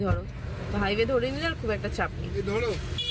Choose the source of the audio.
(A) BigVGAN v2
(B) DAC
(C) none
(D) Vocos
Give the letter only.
C